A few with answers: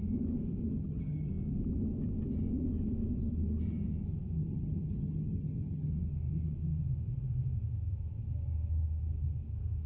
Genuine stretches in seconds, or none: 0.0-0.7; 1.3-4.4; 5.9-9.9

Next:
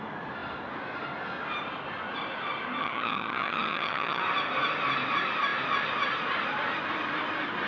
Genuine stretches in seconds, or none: 0.0-2.8; 4.2-7.7

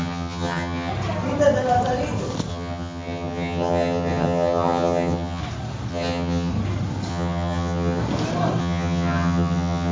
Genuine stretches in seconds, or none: 0.9-2.5; 5.4-5.9; 6.5-7.1; 8.0-8.6

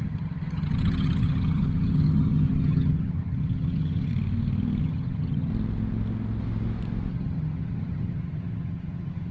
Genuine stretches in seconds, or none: 4.1-4.8; 5.5-7.1